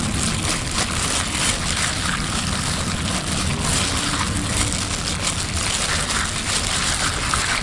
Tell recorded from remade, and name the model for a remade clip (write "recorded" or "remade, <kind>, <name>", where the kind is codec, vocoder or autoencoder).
recorded